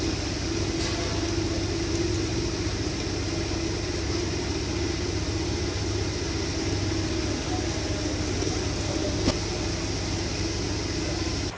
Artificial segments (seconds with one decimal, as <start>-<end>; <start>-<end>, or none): none